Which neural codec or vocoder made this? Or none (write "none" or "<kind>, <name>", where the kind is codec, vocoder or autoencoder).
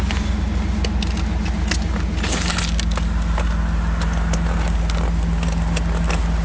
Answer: none